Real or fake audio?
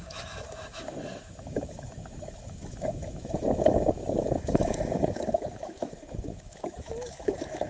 fake